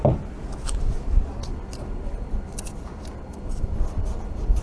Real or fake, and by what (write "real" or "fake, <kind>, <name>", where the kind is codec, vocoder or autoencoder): real